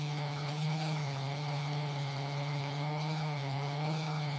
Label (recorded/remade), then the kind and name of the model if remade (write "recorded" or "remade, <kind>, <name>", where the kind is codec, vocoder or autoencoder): remade, codec, HILCodec